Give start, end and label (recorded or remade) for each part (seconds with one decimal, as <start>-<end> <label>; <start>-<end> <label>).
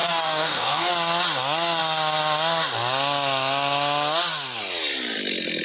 0.0-0.9 remade; 0.9-5.6 recorded